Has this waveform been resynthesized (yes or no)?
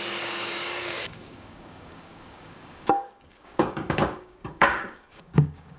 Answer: yes